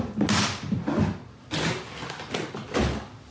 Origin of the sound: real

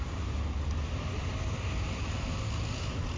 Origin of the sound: real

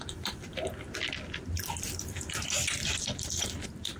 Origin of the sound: real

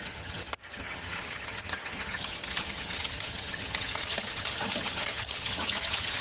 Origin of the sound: fake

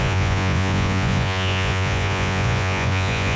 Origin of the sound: fake